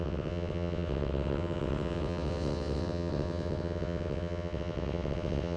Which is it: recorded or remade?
remade